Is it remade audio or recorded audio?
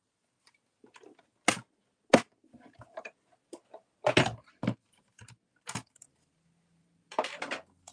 recorded